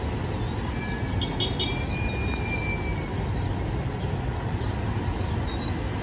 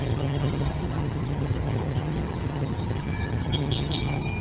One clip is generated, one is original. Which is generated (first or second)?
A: second